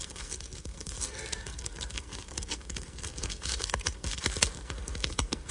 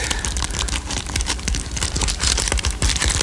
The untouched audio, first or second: second